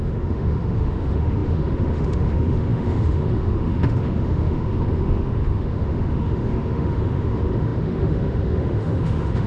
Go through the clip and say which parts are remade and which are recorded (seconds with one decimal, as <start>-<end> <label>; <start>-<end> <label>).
0.0-9.5 remade